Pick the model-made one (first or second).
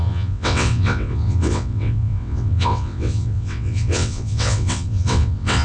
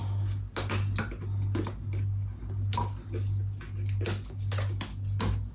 first